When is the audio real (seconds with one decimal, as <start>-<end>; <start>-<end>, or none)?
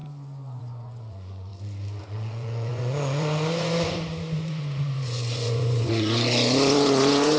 0.0-0.6; 1.5-2.0